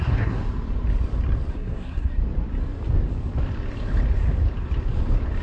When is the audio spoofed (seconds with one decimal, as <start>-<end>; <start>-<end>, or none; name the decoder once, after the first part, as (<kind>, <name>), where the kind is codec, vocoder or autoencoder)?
0.0-0.4 (codec, SNAC); 1.5-2.2